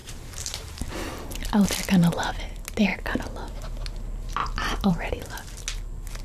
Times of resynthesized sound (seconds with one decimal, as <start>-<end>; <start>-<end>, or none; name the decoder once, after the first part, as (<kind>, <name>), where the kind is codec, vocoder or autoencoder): 0.0-0.9 (vocoder, BigVGAN v2); 4.4-4.9